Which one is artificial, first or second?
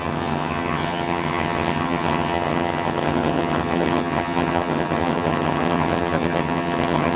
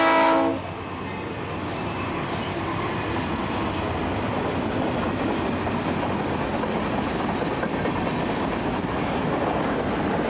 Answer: first